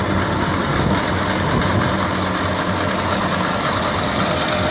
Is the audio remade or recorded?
recorded